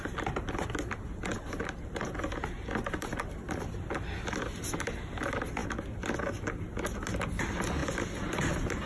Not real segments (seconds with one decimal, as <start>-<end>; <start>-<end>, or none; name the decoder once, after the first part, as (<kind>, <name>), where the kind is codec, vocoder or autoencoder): none